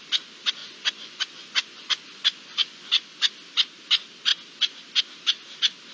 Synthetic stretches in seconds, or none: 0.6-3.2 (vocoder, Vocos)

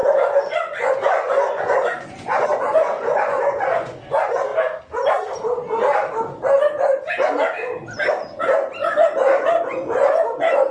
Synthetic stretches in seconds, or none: 0.0-4.0 (vocoder, Vocos); 8.8-10.2

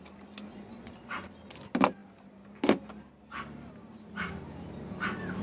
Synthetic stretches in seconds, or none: 0.5-1.1 (vocoder, Vocos)

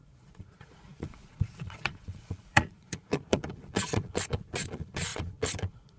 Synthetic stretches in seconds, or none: 0.0-6.0 (vocoder, Vocos)

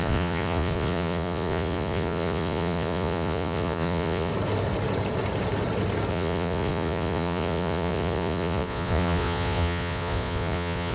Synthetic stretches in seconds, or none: 0.0-4.3 (vocoder, Vocos); 6.1-10.9

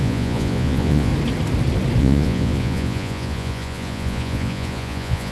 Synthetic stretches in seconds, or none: 0.0-1.1 (vocoder, Vocos); 2.0-5.3